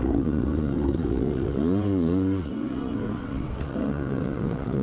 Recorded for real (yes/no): no